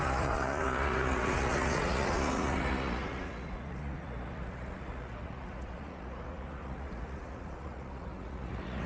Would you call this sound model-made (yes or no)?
yes